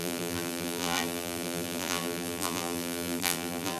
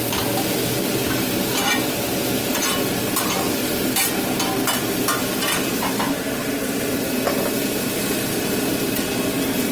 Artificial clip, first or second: first